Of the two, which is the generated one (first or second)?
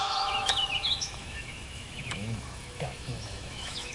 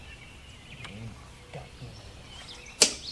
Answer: first